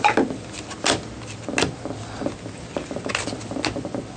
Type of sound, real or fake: real